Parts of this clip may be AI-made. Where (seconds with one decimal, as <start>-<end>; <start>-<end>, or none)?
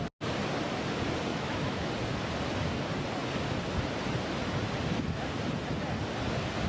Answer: 1.3-1.9